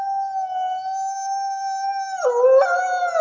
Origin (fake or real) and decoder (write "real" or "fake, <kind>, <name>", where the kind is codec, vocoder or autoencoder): real